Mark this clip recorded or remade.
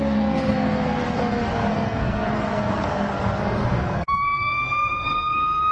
remade